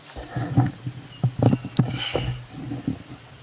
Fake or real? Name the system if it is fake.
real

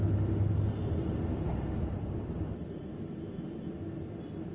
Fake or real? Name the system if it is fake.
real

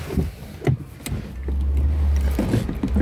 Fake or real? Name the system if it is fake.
real